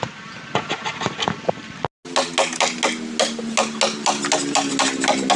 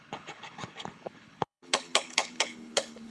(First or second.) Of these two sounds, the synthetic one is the second